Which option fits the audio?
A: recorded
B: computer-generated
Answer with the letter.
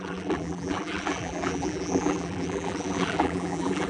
B